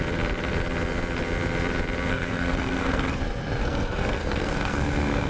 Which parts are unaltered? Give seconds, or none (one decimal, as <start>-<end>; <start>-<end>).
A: 0.0-2.1; 3.2-3.6